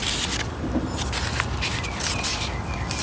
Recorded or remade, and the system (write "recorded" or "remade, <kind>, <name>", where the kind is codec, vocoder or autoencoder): recorded